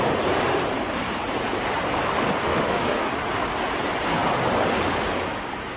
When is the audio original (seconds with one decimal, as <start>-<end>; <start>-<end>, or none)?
0.0-2.4; 3.1-5.8

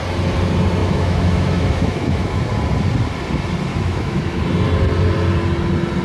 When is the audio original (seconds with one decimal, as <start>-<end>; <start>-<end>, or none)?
0.0-0.8; 2.4-3.7; 4.4-6.0